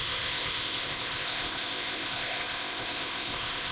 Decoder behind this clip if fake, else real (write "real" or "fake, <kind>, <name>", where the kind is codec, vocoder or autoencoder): fake, codec, ZipCodec